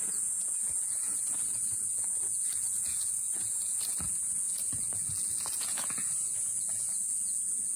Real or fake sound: fake